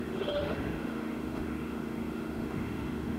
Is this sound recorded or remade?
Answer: remade